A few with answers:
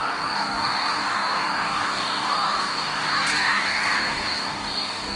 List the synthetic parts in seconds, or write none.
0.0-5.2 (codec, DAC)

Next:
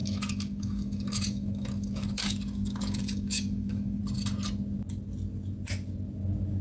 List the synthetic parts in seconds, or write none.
0.0-4.0 (codec, DAC)